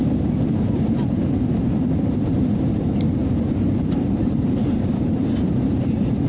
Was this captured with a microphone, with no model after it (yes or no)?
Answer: no